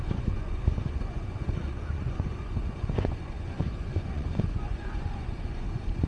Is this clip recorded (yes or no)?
no